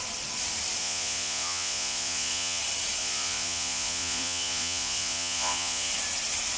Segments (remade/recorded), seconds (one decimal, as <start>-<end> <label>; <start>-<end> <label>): 0.0-0.8 recorded; 0.8-2.6 remade; 2.6-3.0 recorded; 3.0-5.9 remade; 5.9-6.6 recorded